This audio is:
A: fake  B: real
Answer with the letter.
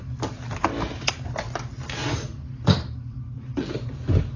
B